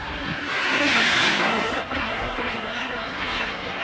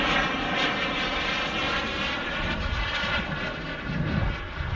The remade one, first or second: first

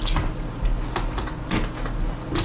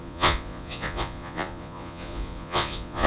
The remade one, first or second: second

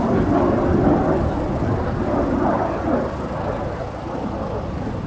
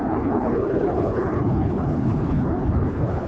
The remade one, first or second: second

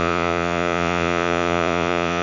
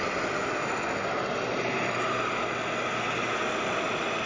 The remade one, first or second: first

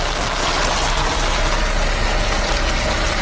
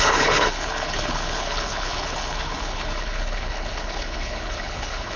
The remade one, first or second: second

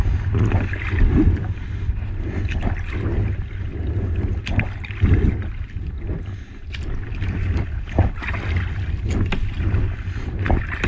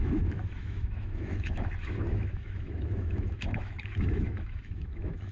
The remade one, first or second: second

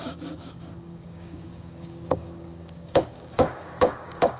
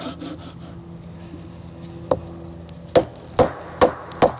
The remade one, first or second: first